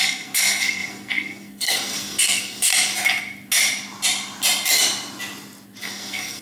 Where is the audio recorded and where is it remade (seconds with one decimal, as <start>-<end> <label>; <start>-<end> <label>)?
0.0-2.7 remade; 2.7-5.8 recorded; 5.8-6.4 remade